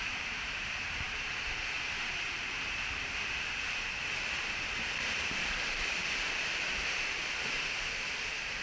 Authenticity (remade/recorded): remade